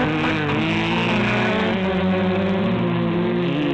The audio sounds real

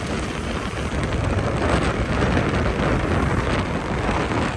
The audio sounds real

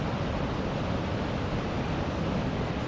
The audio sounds real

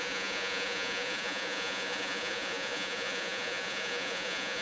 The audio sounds fake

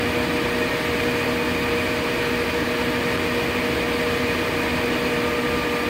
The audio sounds real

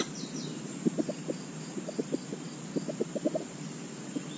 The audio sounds real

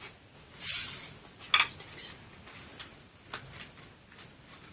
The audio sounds real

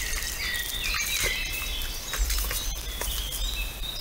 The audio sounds real